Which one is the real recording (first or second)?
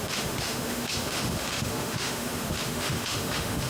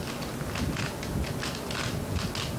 second